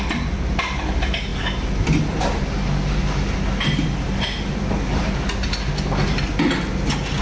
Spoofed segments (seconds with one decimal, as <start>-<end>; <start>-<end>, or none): none